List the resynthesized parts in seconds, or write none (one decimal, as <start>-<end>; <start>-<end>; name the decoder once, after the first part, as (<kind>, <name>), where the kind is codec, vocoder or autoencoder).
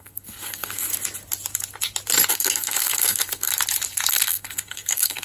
0.0-0.9 (codec, SNAC); 2.3-3.5; 4.1-5.2